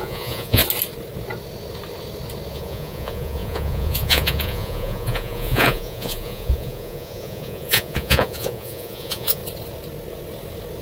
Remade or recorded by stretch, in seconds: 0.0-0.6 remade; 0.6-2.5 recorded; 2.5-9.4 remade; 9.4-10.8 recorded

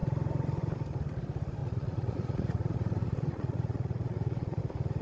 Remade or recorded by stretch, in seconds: 0.0-1.6 recorded; 1.6-4.6 remade; 4.6-5.0 recorded

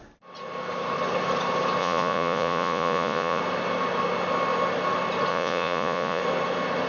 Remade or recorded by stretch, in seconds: 0.0-1.8 recorded; 1.8-3.4 remade; 3.4-5.3 recorded; 5.3-6.2 remade; 6.2-6.9 recorded

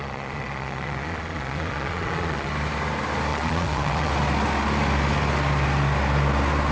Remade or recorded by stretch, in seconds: 0.0-2.5 remade; 2.5-3.3 recorded; 3.3-4.1 remade; 4.1-6.7 recorded

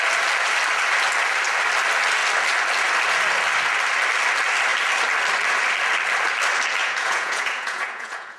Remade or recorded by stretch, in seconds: 0.0-6.8 recorded; 6.8-8.4 remade

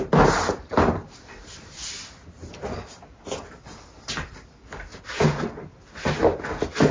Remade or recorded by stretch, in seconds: 0.0-4.9 recorded; 4.9-5.4 remade; 5.4-6.9 recorded